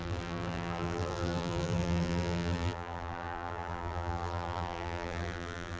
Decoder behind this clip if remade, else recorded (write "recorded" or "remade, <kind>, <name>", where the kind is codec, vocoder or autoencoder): remade, vocoder, BigVGAN v2